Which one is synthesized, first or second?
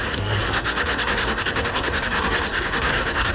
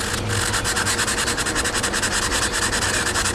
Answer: first